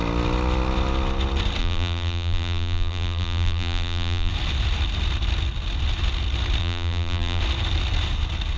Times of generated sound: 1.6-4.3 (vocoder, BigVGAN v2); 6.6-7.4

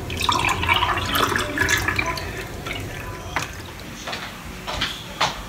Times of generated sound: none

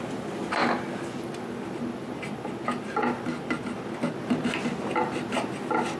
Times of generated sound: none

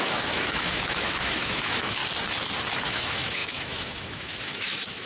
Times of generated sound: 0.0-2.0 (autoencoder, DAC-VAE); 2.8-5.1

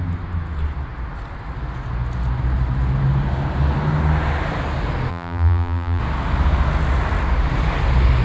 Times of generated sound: 5.1-6.0 (vocoder, BigVGAN v2)

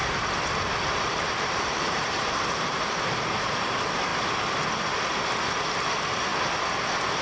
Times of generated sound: 0.0-2.6 (vocoder, BigVGAN v2)